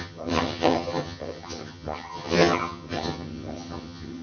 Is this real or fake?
fake